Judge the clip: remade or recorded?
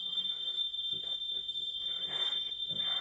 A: remade